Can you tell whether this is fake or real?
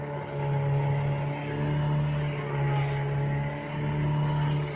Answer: real